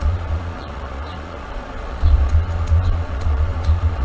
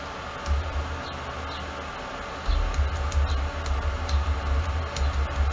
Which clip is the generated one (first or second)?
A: first